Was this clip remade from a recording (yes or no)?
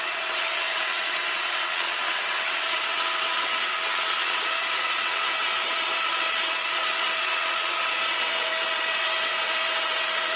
yes